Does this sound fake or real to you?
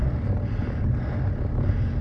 real